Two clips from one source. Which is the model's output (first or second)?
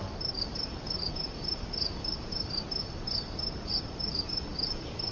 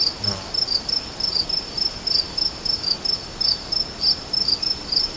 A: first